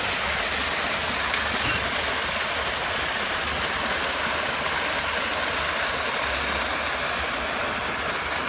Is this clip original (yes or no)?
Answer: yes